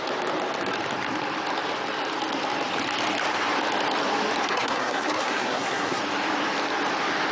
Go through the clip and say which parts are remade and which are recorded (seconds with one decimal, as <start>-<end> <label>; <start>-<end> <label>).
0.0-4.4 recorded; 4.4-6.0 remade; 6.0-7.3 recorded